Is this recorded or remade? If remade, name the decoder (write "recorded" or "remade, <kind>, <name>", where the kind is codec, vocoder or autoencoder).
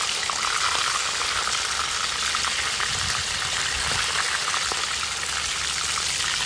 recorded